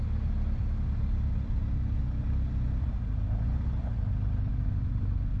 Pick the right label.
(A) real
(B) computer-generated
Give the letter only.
A